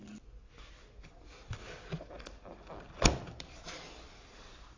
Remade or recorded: recorded